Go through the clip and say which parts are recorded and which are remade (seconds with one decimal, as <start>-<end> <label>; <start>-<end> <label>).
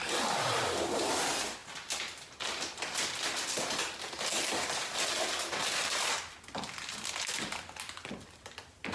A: 0.0-8.9 recorded